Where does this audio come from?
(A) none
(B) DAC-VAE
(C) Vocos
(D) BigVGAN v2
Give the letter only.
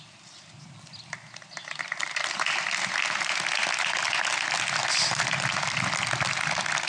A